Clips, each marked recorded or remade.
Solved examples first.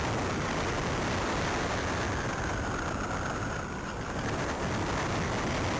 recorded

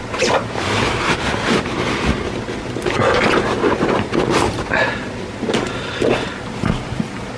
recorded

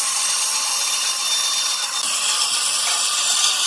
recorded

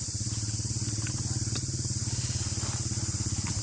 recorded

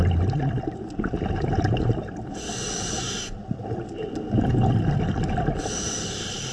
recorded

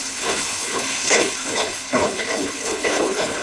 remade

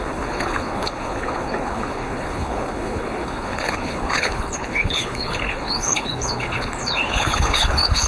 remade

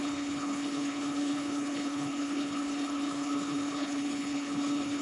remade